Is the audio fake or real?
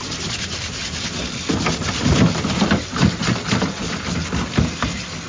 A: real